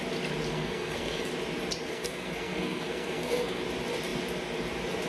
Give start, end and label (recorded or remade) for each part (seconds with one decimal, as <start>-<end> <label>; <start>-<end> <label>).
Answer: 0.0-0.5 recorded; 0.5-1.3 remade; 1.3-1.9 recorded; 1.9-3.6 remade; 3.6-5.1 recorded